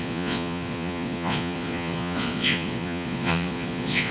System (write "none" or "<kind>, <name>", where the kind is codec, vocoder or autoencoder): vocoder, Vocos